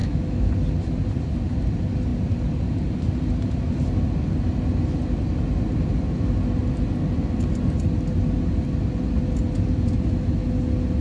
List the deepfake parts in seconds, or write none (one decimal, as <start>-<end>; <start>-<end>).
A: 0.0-0.5